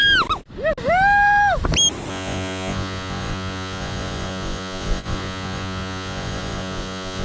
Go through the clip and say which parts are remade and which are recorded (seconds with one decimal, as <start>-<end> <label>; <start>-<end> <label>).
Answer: 0.0-2.1 recorded; 2.1-7.2 remade